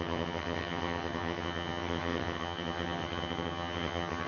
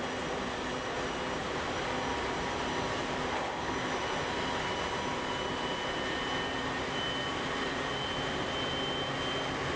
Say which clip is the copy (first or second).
first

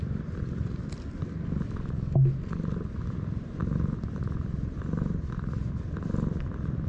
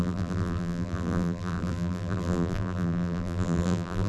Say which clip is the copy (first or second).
second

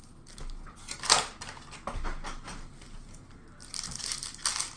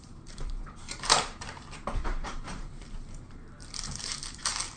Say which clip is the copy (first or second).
second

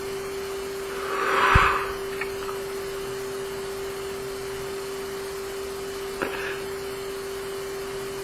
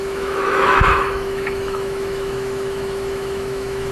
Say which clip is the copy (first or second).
second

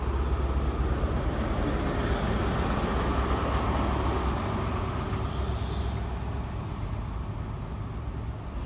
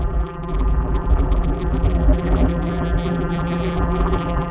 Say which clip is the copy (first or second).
second